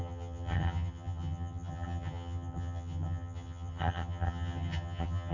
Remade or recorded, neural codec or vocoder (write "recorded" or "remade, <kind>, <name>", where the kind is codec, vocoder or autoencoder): remade, vocoder, HiFi-GAN